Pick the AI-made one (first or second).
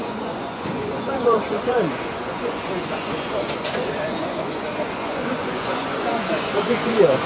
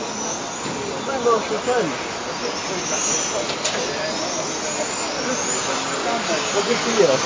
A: first